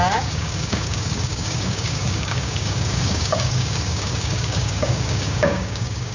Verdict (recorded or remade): remade